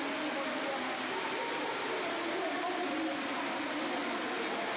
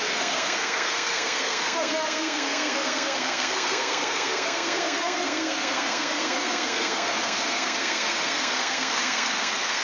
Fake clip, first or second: second